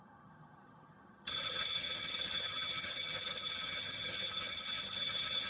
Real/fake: fake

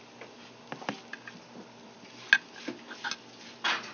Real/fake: real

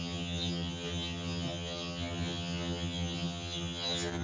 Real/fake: fake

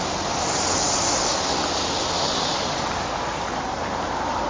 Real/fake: real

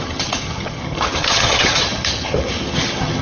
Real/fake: fake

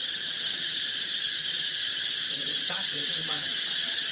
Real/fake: fake